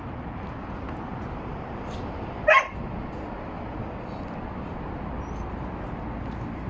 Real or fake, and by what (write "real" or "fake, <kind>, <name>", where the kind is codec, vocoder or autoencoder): real